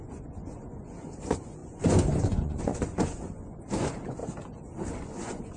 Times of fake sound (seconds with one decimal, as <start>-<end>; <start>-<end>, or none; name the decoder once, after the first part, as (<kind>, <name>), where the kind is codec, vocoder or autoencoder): 0.0-4.2 (vocoder, Vocos); 5.0-5.6

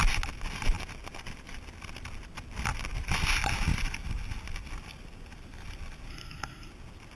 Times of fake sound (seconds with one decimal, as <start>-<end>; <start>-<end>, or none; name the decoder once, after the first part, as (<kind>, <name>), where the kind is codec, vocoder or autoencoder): 6.1-6.7 (codec, SNAC)

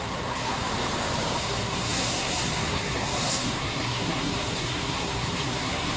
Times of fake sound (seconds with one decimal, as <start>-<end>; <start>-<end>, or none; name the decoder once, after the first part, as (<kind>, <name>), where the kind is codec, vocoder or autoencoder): 0.0-0.7 (codec, SNAC); 1.4-6.0

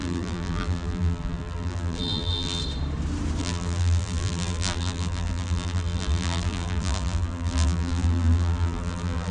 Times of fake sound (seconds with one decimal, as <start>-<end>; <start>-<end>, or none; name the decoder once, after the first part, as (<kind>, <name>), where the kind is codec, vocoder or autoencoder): 0.0-2.6 (vocoder, BigVGAN v2); 3.4-9.3

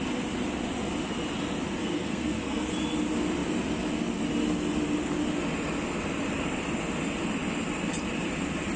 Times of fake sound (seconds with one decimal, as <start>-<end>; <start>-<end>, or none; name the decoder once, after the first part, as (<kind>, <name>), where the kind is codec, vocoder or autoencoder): 1.8-2.7 (codec, SNAC)

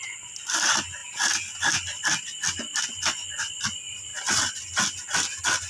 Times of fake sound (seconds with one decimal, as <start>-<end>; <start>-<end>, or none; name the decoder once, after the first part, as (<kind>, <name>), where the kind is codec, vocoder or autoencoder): none

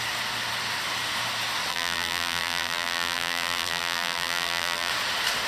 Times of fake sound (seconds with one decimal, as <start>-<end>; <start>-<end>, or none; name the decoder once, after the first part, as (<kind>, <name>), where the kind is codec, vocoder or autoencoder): 1.7-4.9 (vocoder, BigVGAN v2)

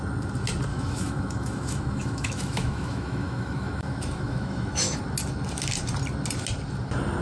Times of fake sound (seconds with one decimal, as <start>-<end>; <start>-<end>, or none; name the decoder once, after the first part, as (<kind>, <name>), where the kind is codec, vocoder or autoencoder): 0.7-5.0 (autoencoder, DAC-VAE)